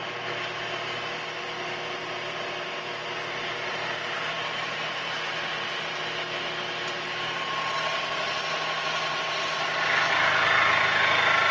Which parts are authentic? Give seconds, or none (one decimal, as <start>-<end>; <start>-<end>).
0.0-3.7; 6.0-9.1; 9.7-11.5